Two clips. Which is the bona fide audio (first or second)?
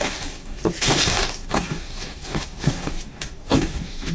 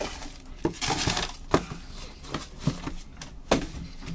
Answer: second